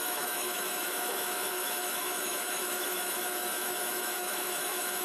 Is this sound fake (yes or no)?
yes